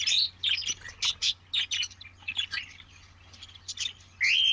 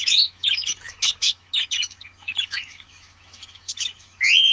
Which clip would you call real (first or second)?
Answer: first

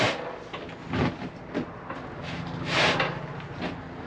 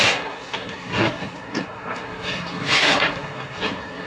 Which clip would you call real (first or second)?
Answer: first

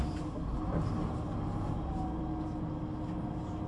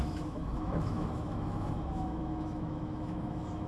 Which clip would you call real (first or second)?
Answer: first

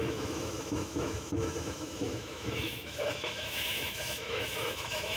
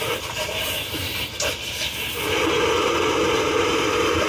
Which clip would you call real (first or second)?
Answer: second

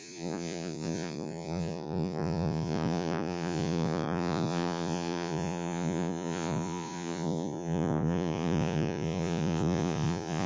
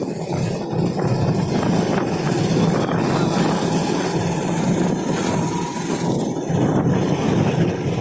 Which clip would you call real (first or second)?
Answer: second